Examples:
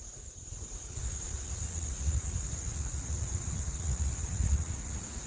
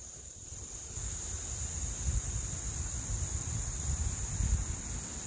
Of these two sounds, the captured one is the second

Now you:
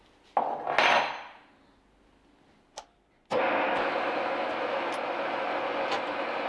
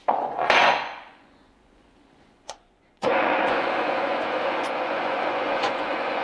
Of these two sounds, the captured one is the first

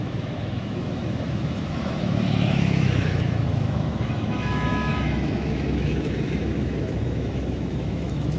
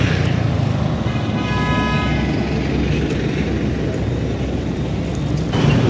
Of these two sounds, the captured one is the second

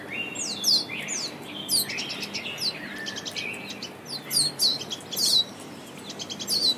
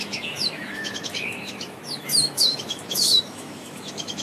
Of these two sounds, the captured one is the first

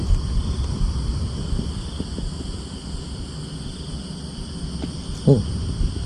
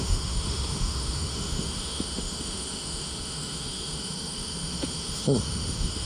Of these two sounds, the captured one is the first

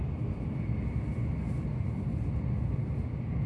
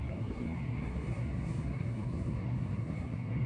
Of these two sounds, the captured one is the first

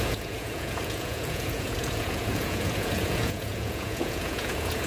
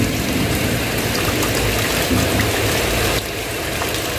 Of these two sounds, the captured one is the second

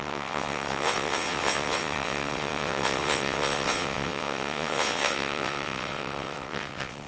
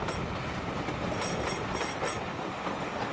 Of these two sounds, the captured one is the second